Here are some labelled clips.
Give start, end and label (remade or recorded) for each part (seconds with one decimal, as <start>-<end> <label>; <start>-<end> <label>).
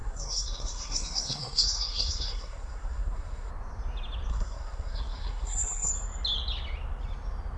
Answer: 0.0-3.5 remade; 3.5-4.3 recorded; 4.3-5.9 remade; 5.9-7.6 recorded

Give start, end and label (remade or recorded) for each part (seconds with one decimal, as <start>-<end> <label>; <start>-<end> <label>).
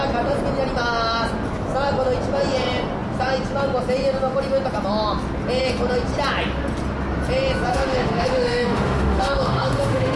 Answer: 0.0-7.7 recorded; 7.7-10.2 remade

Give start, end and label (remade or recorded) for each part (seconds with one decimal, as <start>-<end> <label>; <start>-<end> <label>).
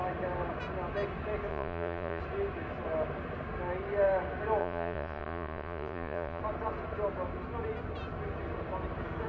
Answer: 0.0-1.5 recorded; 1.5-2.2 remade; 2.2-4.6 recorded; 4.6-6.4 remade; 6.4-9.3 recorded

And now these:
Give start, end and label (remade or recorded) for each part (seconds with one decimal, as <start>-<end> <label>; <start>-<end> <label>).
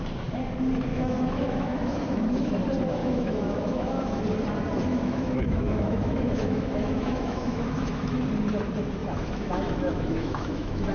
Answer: 0.0-0.9 recorded; 0.9-2.5 remade; 2.5-3.0 recorded; 3.0-4.2 remade; 4.2-4.9 recorded; 4.9-8.2 remade; 8.2-9.0 recorded; 9.0-10.9 remade